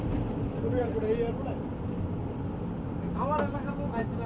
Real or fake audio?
real